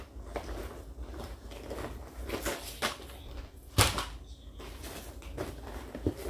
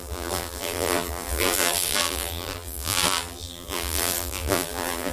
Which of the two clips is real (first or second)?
first